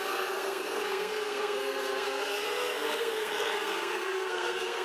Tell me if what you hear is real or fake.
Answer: fake